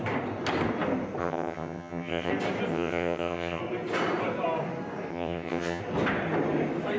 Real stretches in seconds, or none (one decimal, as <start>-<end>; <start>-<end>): 0.0-1.2; 2.3-2.7; 3.6-5.1; 5.8-7.0

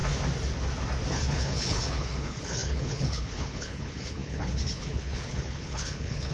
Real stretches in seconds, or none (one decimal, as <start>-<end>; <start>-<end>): 0.0-1.1

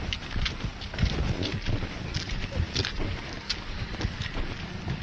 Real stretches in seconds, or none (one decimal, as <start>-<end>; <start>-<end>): 0.0-5.0

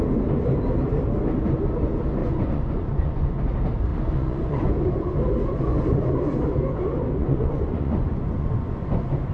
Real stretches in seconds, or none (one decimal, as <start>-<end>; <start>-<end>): 0.0-2.2; 3.4-3.9; 4.7-7.2